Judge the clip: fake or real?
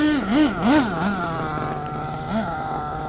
real